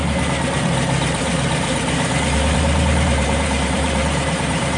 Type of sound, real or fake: fake